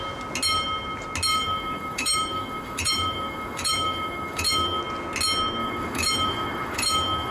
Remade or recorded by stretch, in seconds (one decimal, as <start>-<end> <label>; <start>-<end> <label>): 0.0-1.3 recorded; 1.3-4.8 remade; 4.8-5.6 recorded; 5.6-7.3 remade